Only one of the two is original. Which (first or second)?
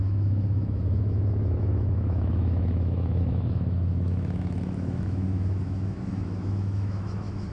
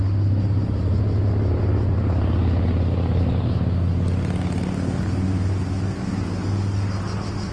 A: second